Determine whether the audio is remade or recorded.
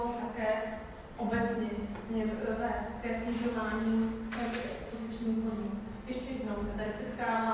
recorded